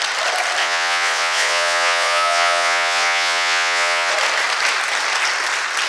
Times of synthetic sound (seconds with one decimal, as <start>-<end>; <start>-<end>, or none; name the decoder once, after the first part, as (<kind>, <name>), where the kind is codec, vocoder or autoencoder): 0.6-4.1 (vocoder, Vocos)